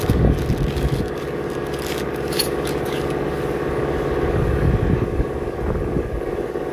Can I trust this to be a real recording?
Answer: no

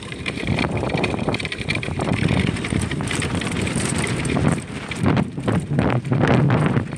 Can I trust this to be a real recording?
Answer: no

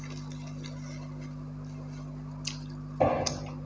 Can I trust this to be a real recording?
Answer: yes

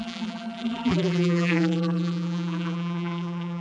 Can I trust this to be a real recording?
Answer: no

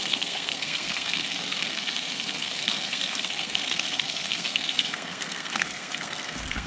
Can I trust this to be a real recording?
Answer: no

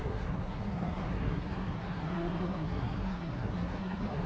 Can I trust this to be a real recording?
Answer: no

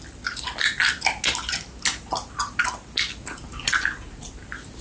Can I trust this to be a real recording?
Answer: yes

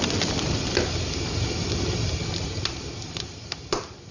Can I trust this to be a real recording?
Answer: yes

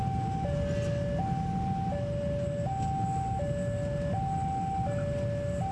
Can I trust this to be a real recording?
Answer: yes